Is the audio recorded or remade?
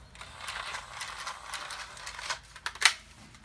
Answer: recorded